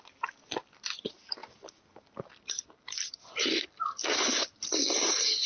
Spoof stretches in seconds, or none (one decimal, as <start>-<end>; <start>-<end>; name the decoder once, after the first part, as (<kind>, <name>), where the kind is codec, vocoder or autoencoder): none